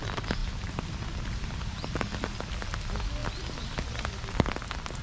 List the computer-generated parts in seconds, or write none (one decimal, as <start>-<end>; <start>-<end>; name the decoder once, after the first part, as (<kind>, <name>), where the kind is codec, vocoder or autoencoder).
none